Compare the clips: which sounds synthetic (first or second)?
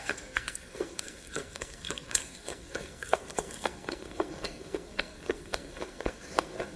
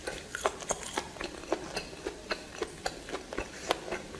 first